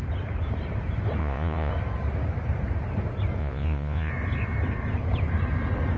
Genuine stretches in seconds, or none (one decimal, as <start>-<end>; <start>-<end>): 0.0-1.2; 1.7-3.4; 4.1-6.0